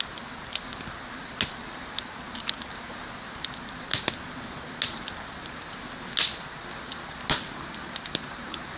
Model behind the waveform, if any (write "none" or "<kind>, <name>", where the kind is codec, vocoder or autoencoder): none